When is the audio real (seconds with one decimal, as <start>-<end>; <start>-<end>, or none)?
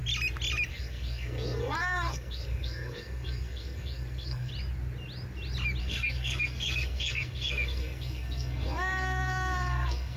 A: 0.0-0.7; 4.5-5.8